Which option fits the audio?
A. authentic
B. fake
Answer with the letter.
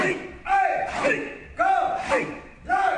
A